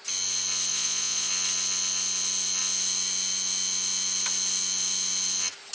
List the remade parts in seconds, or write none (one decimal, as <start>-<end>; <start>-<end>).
0.7-1.3